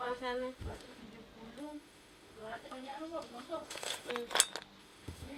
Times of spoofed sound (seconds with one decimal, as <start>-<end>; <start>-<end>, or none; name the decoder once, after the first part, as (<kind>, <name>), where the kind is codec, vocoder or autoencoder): 0.0-1.0 (autoencoder, DAC-VAE); 1.6-4.1; 4.8-5.4